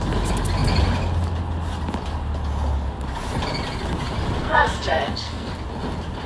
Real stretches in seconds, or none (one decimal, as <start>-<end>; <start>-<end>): 0.0-4.4; 5.5-6.3